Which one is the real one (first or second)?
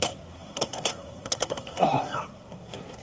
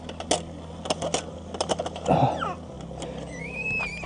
second